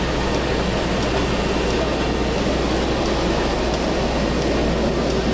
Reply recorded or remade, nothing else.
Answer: recorded